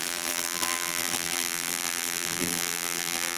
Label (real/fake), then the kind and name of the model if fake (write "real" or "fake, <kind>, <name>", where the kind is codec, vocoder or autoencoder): fake, vocoder, BigVGAN v2